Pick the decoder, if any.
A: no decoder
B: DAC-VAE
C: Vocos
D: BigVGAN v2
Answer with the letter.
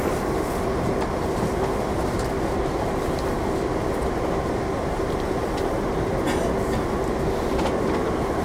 A